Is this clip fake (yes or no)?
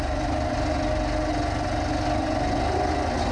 no